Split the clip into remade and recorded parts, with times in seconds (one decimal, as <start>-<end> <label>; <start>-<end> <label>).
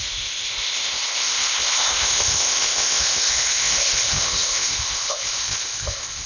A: 0.0-6.3 remade